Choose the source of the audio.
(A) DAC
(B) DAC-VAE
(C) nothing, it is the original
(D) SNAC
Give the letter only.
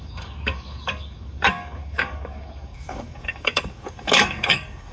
A